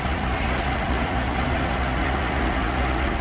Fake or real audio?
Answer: fake